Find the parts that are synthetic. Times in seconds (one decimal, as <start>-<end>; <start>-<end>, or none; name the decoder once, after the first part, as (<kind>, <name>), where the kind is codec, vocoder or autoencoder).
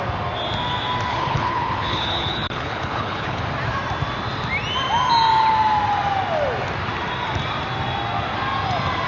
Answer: 1.1-3.4 (codec, HILCodec)